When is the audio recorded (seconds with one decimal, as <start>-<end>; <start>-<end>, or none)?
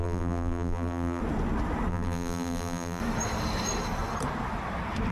1.2-1.9; 3.0-5.1